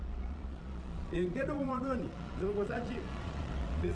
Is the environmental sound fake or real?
fake